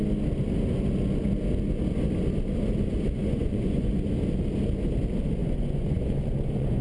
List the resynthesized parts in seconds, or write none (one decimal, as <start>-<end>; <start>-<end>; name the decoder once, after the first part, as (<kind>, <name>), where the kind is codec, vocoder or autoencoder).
3.2-3.9 (vocoder, Vocos); 5.4-6.8